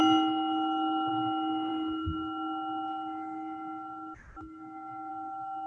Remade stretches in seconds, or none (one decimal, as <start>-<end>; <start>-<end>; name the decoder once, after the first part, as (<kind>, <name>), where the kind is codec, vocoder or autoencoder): none